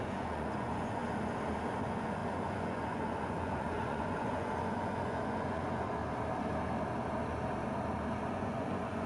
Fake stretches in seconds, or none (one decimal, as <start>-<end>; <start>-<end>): 0.0-1.0; 1.8-6.0; 8.3-9.1